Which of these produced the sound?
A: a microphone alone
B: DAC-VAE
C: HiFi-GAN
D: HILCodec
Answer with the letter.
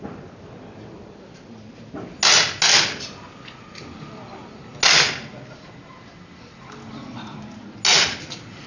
A